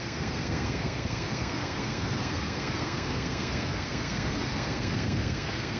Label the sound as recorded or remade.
remade